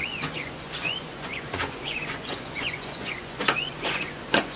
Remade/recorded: remade